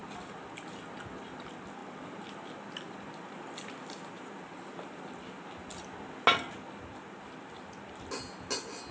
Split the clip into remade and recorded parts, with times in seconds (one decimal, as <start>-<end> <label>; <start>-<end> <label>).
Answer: 0.0-8.9 recorded